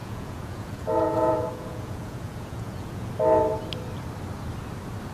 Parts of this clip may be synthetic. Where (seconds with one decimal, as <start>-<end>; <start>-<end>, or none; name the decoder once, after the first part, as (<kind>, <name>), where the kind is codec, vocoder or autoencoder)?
0.0-3.1 (vocoder, Vocos)